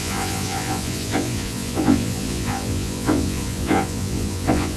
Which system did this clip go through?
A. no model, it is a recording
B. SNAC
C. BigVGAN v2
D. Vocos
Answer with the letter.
D